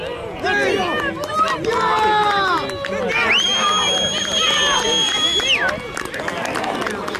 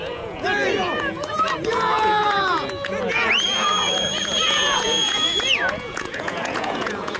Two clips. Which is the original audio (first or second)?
first